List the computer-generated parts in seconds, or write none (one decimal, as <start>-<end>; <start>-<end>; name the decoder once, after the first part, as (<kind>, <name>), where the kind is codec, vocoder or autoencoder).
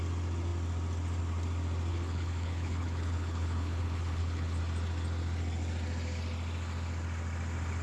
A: 1.9-4.6 (codec, HILCodec)